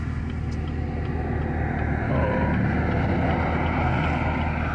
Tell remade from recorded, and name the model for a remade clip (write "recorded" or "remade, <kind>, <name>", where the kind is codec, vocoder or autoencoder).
recorded